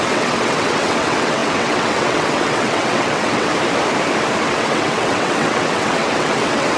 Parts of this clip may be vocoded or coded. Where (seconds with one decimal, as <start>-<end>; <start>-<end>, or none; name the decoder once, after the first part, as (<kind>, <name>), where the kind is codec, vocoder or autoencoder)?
0.0-3.5 (vocoder, WaveNeXt); 4.4-6.8